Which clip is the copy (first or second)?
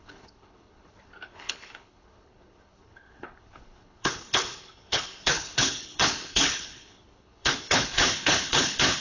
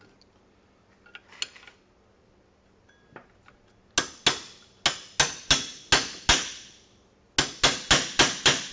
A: first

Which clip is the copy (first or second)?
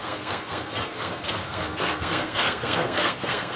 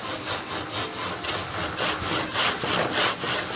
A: first